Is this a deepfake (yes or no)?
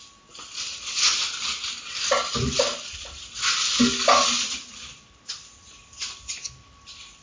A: no